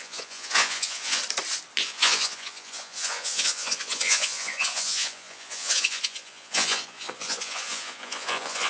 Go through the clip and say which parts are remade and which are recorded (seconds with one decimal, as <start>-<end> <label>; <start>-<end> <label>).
0.0-1.2 remade; 1.2-1.8 recorded; 1.8-8.7 remade